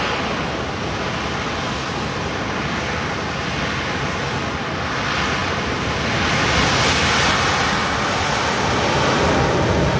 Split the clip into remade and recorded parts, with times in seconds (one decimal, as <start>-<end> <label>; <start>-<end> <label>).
0.0-10.0 recorded